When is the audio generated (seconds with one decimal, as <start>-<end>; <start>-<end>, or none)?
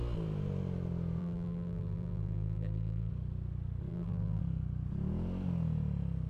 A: 1.2-3.1; 3.9-4.4